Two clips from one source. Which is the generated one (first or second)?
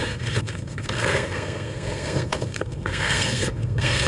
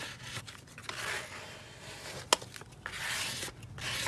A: first